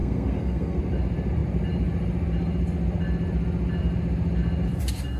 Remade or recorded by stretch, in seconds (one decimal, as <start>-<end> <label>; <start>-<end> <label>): 0.0-0.8 remade; 0.8-5.2 recorded

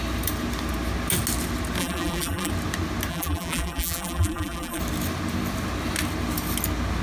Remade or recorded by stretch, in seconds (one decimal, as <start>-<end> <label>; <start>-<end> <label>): 0.0-1.8 recorded; 1.8-2.5 remade; 2.5-3.1 recorded; 3.1-4.8 remade; 4.8-7.0 recorded

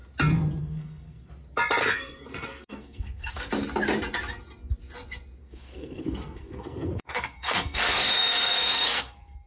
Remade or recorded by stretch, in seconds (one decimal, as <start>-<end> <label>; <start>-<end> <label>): 0.0-0.6 recorded; 0.6-1.3 remade; 1.3-1.8 recorded; 1.8-3.5 remade; 3.5-5.4 recorded; 5.4-9.5 remade

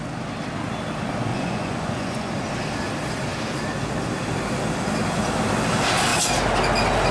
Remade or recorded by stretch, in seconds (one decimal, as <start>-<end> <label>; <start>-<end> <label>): 0.0-1.3 recorded; 1.3-2.3 remade; 2.3-7.1 recorded

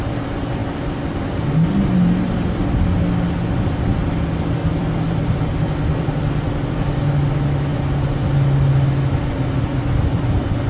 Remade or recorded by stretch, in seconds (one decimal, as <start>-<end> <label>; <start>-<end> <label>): 0.0-0.6 recorded; 0.6-1.4 remade; 1.4-4.6 recorded; 4.6-6.2 remade; 6.2-10.7 recorded